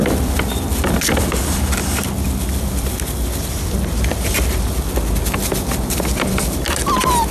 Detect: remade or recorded recorded